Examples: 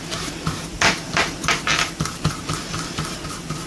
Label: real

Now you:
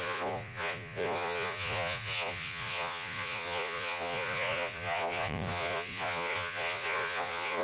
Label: fake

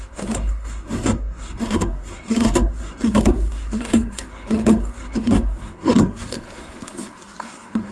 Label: fake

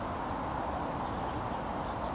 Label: real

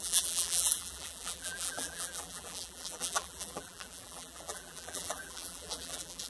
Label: fake